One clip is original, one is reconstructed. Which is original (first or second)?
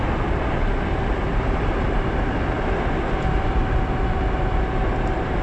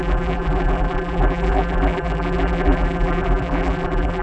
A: first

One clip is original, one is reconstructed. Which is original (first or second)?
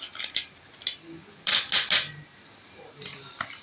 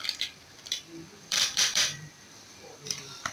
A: first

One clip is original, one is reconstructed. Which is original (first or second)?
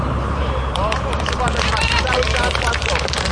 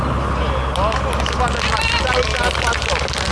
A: second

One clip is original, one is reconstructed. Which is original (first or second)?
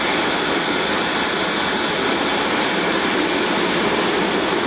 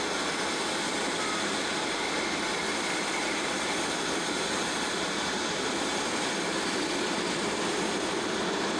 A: first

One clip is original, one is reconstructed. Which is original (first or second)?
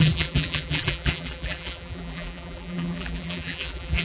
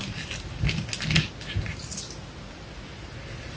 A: second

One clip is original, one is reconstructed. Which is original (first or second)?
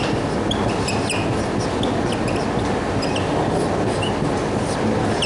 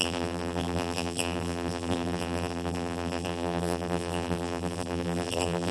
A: first